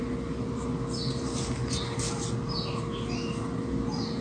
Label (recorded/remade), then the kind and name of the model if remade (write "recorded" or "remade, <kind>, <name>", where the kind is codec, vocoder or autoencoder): recorded